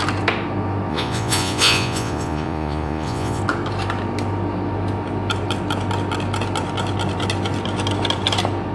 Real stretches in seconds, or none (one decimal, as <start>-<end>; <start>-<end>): 0.0-0.9; 3.4-8.7